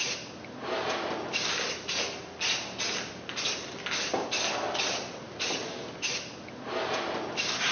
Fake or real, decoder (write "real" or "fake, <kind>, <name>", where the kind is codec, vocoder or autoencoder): real